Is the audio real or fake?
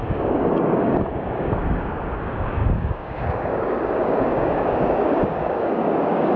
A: fake